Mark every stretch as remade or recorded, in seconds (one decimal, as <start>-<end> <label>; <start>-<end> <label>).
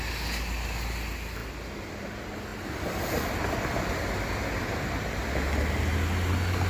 0.0-2.5 recorded; 2.5-3.6 remade; 3.6-6.7 recorded